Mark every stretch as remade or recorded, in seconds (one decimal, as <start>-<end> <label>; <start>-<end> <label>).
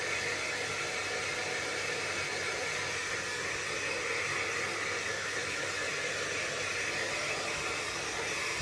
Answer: 0.0-5.1 recorded; 5.1-5.7 remade; 5.7-8.6 recorded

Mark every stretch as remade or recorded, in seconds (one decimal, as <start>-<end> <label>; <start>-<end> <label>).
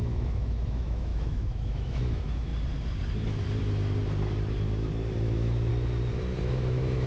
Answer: 0.0-2.5 remade; 2.5-5.2 recorded; 5.2-5.7 remade; 5.7-6.4 recorded; 6.4-7.1 remade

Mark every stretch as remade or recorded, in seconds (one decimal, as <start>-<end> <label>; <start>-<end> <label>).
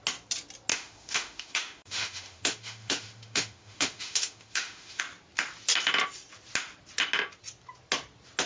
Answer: 0.0-0.7 recorded; 0.7-5.0 remade; 5.0-8.5 recorded